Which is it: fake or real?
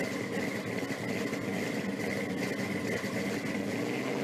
real